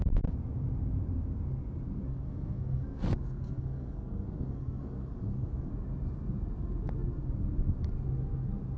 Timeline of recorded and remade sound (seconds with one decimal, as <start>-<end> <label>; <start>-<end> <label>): 0.0-2.1 recorded; 2.1-5.7 remade; 5.7-8.8 recorded